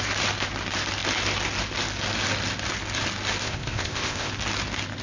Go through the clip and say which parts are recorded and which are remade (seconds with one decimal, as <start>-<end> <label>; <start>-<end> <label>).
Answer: 0.0-3.4 recorded; 3.4-4.3 remade; 4.3-5.0 recorded